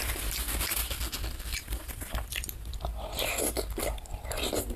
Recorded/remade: recorded